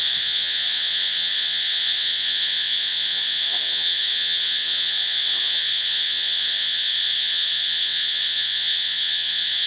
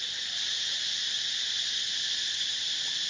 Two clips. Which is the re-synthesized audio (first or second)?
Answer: first